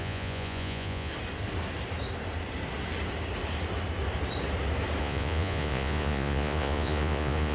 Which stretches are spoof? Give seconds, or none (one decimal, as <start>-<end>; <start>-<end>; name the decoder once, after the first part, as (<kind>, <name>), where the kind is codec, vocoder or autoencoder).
0.0-1.1 (vocoder, Vocos); 5.0-7.5